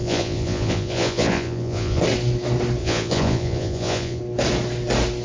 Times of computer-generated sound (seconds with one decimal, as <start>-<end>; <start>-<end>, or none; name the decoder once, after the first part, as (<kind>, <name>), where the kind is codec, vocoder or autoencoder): 0.0-2.0 (vocoder, Vocos); 2.8-4.2